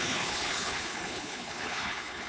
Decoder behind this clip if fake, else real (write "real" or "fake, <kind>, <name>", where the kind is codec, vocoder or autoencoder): fake, codec, HILCodec